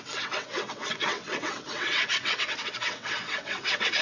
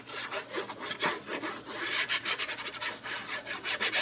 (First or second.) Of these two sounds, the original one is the second